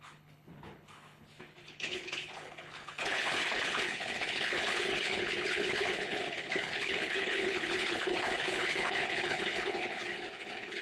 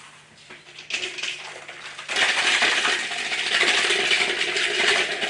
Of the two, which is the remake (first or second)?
first